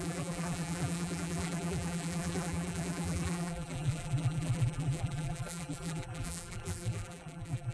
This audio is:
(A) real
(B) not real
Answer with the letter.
B